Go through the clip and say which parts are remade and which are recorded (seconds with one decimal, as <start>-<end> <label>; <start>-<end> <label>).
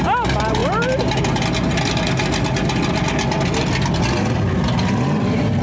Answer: 0.0-5.6 recorded